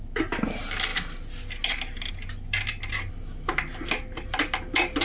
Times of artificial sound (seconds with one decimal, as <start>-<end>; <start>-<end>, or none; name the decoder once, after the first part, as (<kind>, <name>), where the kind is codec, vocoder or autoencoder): none